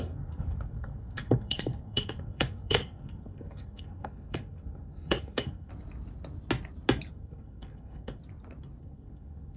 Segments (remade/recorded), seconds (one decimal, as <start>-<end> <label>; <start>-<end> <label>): 0.0-5.7 remade; 5.7-7.1 recorded; 7.1-8.2 remade; 8.2-8.8 recorded; 8.8-9.6 remade